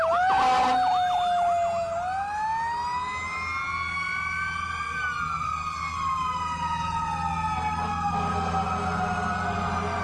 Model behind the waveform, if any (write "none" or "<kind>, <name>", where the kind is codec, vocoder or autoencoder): none